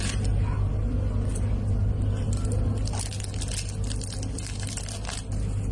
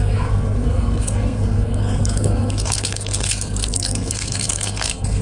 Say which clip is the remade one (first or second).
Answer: second